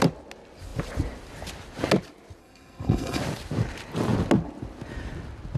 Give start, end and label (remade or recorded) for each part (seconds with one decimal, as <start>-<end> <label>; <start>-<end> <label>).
0.0-2.4 recorded; 2.4-3.2 remade; 3.2-5.6 recorded